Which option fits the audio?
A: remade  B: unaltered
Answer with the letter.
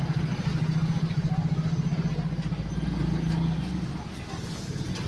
B